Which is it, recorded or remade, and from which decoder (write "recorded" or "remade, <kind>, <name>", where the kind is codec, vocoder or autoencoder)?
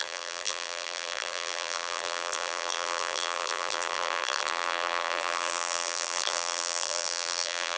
remade, vocoder, BigVGAN v2